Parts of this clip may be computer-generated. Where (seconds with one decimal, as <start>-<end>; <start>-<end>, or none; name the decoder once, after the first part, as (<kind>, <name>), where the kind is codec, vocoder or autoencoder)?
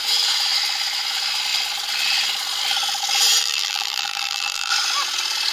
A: 3.4-4.7 (vocoder, BigVGAN v2)